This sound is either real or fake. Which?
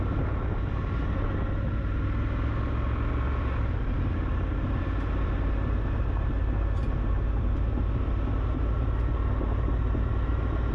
real